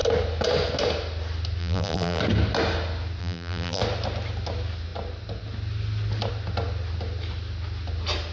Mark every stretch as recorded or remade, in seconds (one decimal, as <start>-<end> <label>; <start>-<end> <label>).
0.0-1.6 recorded; 1.6-2.2 remade; 2.2-3.2 recorded; 3.2-3.8 remade; 3.8-8.3 recorded

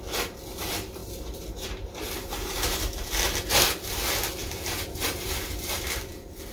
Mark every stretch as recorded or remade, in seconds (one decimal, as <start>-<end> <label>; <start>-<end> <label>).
0.0-1.0 recorded; 1.0-2.9 remade; 2.9-4.4 recorded; 4.4-5.9 remade; 5.9-6.5 recorded

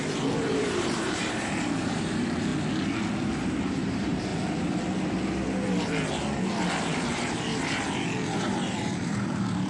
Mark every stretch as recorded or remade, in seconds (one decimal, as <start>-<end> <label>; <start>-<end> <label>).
0.0-2.5 remade; 2.5-3.7 recorded; 3.7-4.3 remade; 4.3-6.8 recorded; 6.8-7.5 remade; 7.5-8.4 recorded; 8.4-9.7 remade

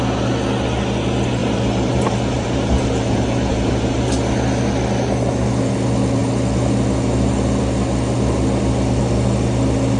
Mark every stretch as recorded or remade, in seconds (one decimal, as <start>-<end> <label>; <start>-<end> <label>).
0.0-1.4 recorded; 1.4-3.8 remade; 3.8-10.0 recorded

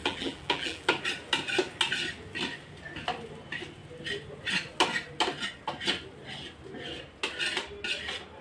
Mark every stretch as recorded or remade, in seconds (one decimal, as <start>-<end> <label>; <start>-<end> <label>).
0.0-0.9 remade; 0.9-8.4 recorded

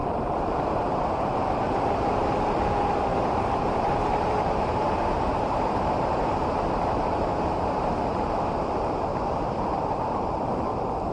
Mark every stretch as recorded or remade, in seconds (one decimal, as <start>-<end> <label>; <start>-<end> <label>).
0.0-2.3 remade; 2.3-3.1 recorded; 3.1-8.0 remade; 8.0-9.1 recorded; 9.1-10.1 remade; 10.1-11.1 recorded